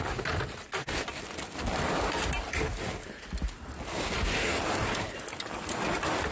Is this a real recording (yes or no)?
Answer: yes